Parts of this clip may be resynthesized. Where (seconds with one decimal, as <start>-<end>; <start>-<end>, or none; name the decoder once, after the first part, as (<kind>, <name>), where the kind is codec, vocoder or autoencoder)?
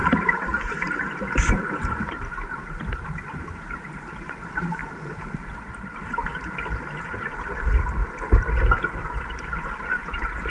0.0-4.8 (vocoder, BigVGAN v2); 5.7-8.0; 9.4-10.5